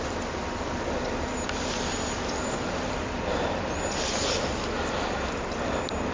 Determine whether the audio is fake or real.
fake